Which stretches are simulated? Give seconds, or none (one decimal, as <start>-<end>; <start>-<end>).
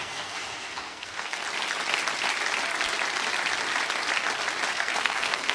0.0-1.4; 4.7-5.5